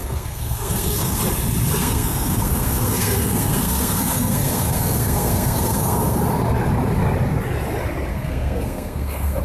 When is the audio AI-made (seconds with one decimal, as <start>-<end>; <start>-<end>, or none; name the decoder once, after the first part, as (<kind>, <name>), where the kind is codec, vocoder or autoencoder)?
0.0-1.2 (codec, SNAC); 1.8-6.2; 8.1-9.4

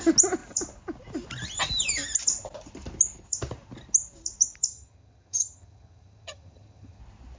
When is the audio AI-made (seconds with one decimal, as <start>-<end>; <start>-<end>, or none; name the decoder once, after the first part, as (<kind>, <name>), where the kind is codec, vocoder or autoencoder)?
4.7-7.0 (vocoder, HiFi-GAN)

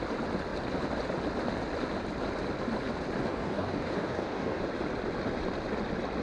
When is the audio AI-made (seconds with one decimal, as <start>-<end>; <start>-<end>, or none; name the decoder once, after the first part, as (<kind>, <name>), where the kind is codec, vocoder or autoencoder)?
3.3-4.6 (codec, DAC)

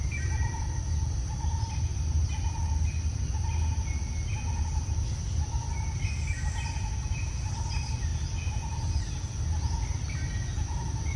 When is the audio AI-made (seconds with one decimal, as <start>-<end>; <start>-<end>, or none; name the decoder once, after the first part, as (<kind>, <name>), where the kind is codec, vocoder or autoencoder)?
none